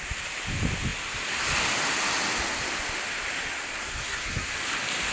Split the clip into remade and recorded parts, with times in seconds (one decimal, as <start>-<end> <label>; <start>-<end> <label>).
0.0-3.8 recorded; 3.8-4.5 remade; 4.5-5.1 recorded